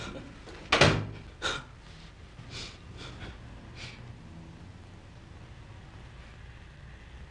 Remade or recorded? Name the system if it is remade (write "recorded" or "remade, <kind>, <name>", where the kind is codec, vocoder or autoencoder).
recorded